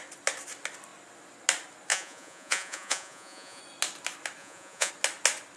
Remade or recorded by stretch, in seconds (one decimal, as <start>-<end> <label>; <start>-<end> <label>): 0.0-1.9 recorded; 1.9-3.6 remade; 3.6-4.4 recorded; 4.4-4.9 remade; 4.9-5.6 recorded